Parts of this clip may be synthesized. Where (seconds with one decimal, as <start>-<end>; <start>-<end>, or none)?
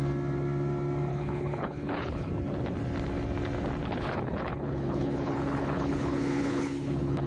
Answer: 1.1-2.3; 3.8-7.3